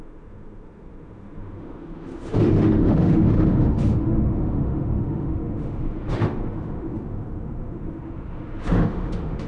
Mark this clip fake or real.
fake